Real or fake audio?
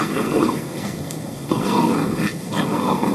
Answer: fake